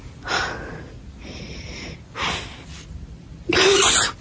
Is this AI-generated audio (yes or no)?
no